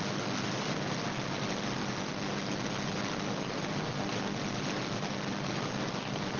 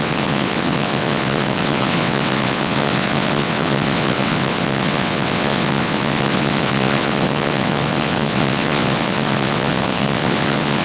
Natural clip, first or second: first